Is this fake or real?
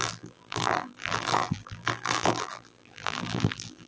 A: fake